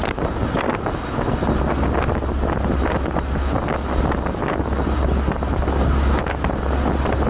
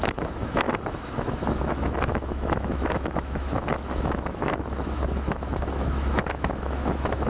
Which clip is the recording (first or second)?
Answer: first